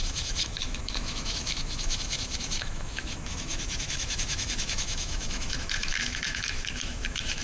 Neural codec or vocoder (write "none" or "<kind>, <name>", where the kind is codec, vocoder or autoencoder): autoencoder, DAC-VAE